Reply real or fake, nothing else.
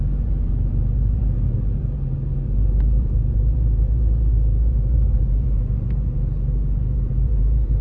fake